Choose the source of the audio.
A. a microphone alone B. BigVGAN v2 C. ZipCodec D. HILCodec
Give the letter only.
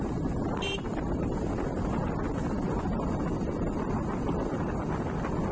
A